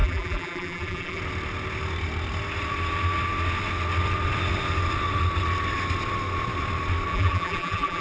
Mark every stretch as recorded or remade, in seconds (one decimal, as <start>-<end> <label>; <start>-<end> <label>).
0.0-1.2 remade; 1.2-7.1 recorded; 7.1-8.0 remade